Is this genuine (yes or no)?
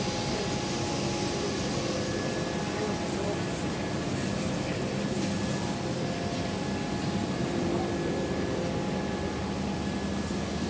yes